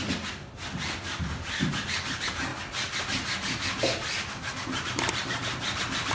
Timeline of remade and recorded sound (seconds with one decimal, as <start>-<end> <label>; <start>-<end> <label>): 0.0-1.7 recorded; 1.7-2.5 remade; 2.5-6.1 recorded